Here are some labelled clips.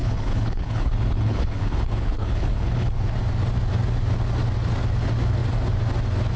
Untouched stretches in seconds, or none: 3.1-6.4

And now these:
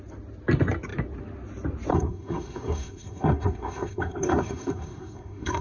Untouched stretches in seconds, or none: 0.0-1.9

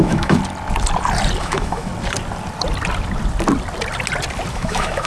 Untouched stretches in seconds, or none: 0.4-1.4; 1.9-4.5

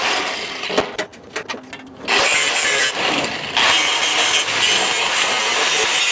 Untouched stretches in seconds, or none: 0.0-6.1

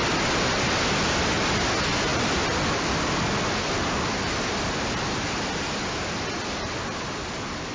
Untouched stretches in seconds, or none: 0.0-7.7

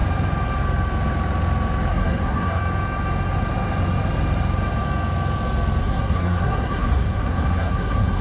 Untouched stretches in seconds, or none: 0.0-1.9; 2.6-5.8

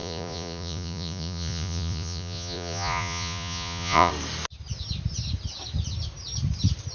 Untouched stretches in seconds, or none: 4.1-6.9